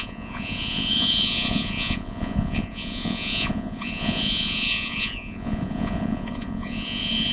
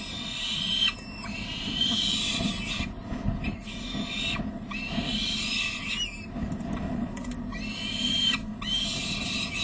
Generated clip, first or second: first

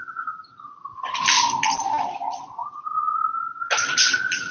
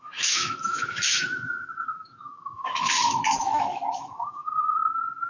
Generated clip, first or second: second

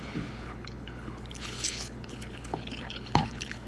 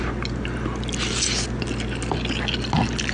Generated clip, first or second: first